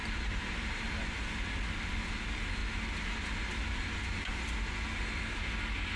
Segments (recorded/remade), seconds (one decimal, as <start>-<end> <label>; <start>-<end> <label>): 0.0-1.3 remade; 1.3-6.0 recorded